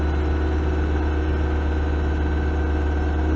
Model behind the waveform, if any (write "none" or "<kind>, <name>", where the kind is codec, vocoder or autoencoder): none